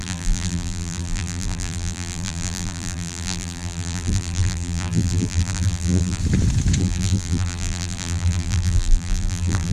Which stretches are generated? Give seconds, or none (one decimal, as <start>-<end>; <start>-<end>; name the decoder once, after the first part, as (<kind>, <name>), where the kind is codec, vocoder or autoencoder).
0.0-6.2 (vocoder, BigVGAN v2); 6.8-9.7